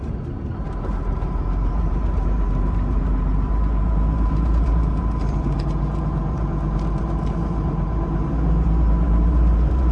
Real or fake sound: fake